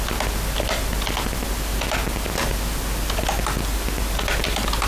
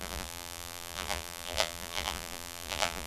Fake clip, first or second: second